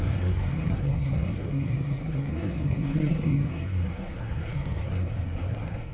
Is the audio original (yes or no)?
no